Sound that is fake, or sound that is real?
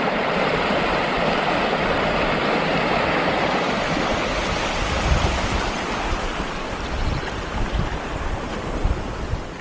real